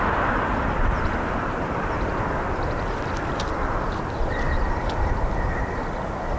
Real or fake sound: fake